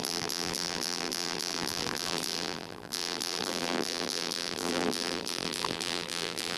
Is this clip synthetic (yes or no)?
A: yes